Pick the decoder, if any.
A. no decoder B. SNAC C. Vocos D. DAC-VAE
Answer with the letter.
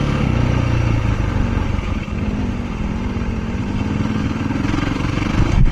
A